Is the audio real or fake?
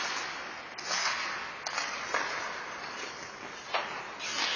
real